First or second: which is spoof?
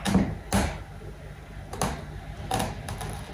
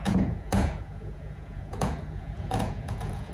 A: second